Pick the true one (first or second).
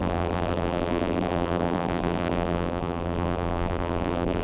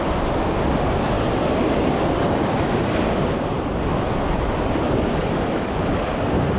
second